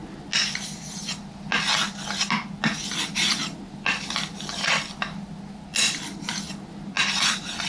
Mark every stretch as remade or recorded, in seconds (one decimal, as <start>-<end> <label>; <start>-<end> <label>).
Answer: 0.0-7.7 recorded